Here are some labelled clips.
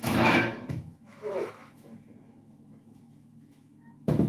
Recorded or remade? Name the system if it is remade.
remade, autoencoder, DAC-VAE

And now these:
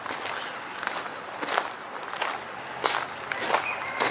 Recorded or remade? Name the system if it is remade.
recorded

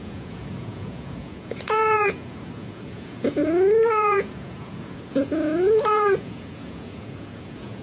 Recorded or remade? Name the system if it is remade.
remade, vocoder, Vocos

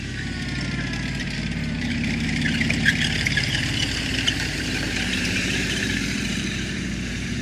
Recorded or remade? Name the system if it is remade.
remade, vocoder, BigVGAN v2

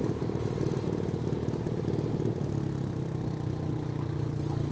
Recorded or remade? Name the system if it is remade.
recorded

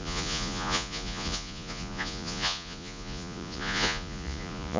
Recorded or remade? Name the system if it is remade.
remade, vocoder, Vocos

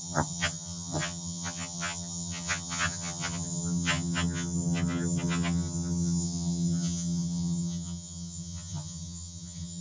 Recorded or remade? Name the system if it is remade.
remade, vocoder, HiFi-GAN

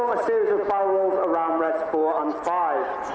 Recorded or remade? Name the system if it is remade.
recorded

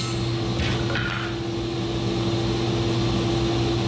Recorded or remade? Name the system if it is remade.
recorded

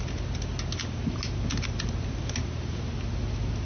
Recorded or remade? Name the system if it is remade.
recorded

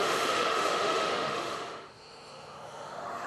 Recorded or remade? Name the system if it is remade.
remade, autoencoder, DAC-VAE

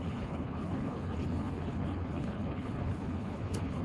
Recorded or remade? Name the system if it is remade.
remade, codec, HILCodec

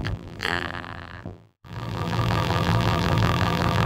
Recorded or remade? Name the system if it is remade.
remade, vocoder, BigVGAN v2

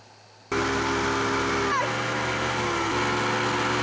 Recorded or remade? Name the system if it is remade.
recorded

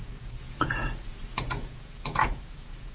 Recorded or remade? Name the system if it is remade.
remade, vocoder, Vocos